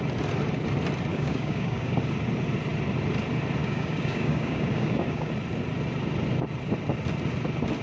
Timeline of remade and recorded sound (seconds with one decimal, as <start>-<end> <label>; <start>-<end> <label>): 0.0-1.1 recorded; 1.1-2.0 remade; 2.0-3.6 recorded; 3.6-5.3 remade; 5.3-7.8 recorded